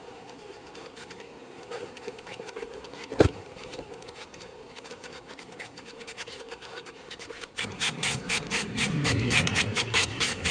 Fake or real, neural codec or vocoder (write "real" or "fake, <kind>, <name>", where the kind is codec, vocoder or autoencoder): fake, codec, SNAC